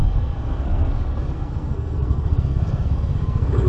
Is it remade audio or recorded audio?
remade